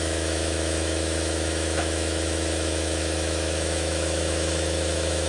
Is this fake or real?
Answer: fake